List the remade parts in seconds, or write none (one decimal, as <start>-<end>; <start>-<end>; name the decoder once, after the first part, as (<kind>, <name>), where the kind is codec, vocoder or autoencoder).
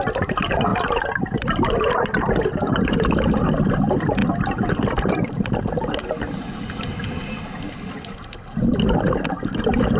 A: none